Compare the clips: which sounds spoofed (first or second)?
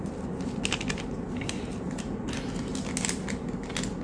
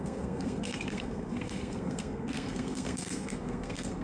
second